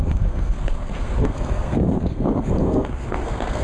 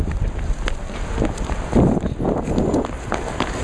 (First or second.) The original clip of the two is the second